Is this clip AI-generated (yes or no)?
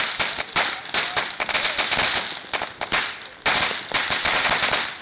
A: no